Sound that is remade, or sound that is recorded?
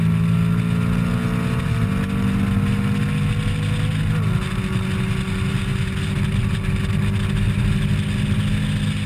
recorded